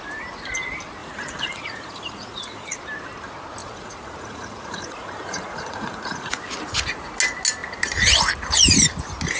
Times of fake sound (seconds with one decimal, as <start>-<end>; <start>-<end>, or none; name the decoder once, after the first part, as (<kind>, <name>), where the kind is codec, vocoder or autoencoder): 1.0-2.8 (vocoder, Vocos); 3.6-6.4